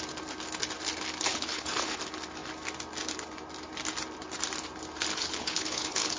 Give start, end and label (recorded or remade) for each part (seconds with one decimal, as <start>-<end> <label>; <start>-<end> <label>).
0.0-1.3 recorded; 1.3-2.0 remade; 2.0-5.1 recorded; 5.1-6.2 remade